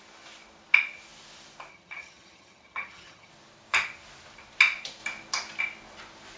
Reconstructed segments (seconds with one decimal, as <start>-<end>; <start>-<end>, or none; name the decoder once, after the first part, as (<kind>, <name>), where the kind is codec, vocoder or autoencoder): 1.7-3.3 (vocoder, HiFi-GAN)